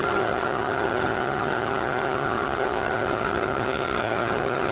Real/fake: fake